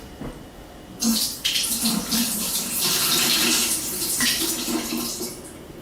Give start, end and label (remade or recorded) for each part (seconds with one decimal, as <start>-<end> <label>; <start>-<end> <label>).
0.0-1.1 recorded; 1.1-4.5 remade; 4.5-5.8 recorded